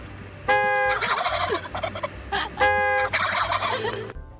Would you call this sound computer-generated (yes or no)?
no